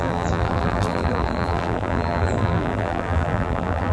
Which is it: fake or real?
fake